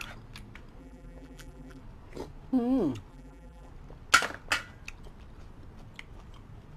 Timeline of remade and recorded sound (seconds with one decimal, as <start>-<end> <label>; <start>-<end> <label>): 0.0-0.8 recorded; 0.8-1.8 remade; 1.8-3.1 recorded; 3.1-3.7 remade; 3.7-6.8 recorded